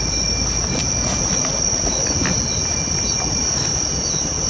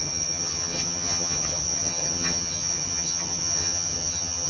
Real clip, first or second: first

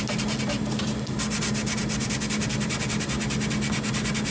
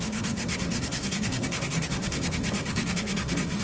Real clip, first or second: first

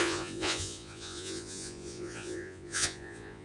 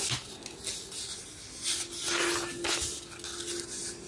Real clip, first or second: second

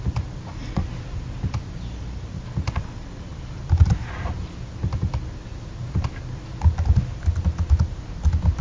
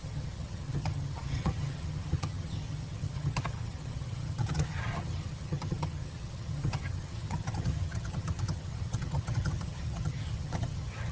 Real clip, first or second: first